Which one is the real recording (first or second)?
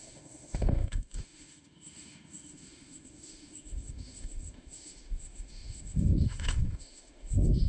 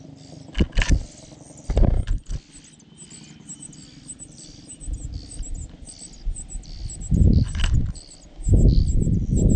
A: second